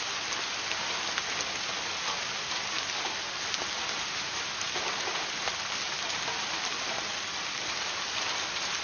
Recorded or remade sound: recorded